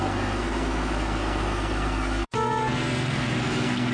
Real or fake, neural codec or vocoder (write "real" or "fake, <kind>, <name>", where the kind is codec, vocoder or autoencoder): fake, codec, SNAC